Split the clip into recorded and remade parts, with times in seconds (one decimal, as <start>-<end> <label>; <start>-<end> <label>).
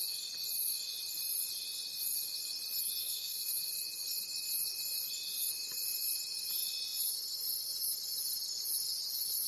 0.0-3.0 recorded; 3.0-3.5 remade; 3.5-9.5 recorded